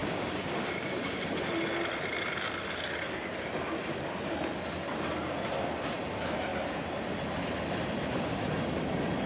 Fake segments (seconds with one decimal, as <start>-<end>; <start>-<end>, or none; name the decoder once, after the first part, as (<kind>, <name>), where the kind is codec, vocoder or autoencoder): 0.0-1.3 (codec, DAC)